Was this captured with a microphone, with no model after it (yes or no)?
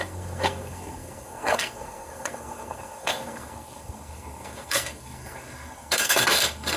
no